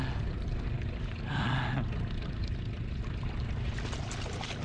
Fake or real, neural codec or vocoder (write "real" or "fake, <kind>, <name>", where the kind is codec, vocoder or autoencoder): real